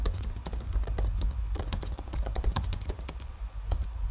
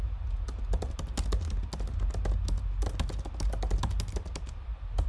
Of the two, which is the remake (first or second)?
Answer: first